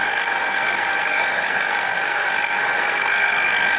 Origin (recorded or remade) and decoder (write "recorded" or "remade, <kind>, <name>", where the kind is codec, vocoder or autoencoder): remade, codec, SNAC